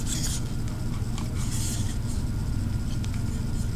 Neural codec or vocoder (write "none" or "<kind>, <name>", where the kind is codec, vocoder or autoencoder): none